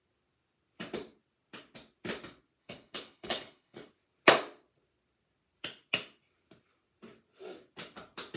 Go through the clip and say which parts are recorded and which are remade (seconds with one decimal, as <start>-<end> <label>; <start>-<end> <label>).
0.0-2.6 recorded; 2.6-3.9 remade; 3.9-8.4 recorded